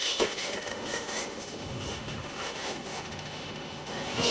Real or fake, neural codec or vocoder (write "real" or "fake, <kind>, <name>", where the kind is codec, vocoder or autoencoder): fake, autoencoder, DAC-VAE